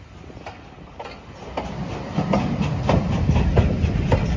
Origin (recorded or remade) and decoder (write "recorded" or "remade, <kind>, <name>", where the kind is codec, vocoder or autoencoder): recorded